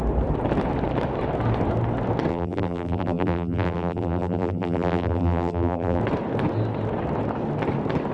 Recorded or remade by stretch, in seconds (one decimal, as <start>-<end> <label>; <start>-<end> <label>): 0.0-2.3 recorded; 2.3-6.0 remade; 6.0-8.1 recorded